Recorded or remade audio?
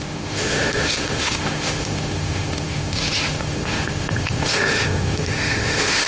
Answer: remade